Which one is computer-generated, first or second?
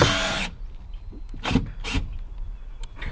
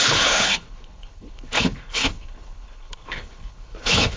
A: second